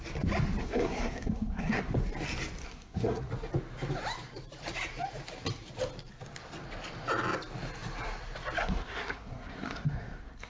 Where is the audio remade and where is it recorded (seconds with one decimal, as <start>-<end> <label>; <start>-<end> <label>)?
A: 0.0-0.6 recorded; 0.6-1.9 remade; 1.9-2.6 recorded; 2.6-3.3 remade; 3.3-8.6 recorded; 8.6-10.5 remade